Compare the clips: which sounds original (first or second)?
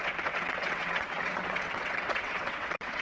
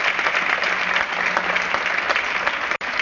second